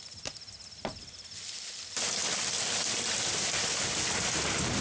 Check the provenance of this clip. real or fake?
real